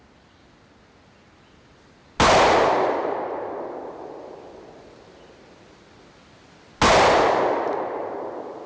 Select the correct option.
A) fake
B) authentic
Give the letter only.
B